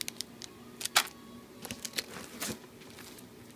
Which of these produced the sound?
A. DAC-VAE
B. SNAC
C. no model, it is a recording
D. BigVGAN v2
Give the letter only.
C